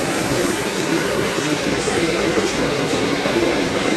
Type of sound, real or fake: fake